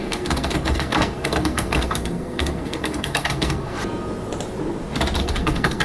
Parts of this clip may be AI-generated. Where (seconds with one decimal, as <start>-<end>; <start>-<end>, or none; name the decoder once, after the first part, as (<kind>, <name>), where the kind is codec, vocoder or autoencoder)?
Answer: 0.0-3.8 (codec, SNAC); 5.2-5.8